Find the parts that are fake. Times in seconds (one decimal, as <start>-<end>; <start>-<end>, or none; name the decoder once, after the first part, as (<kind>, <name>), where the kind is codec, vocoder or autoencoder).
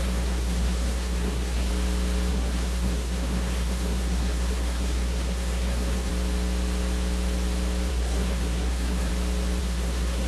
0.0-1.7 (codec, SNAC); 2.3-6.1; 7.9-9.1; 9.6-10.3